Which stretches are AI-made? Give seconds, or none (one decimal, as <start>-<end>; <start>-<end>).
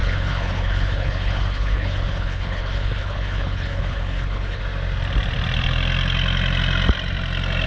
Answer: 0.0-4.6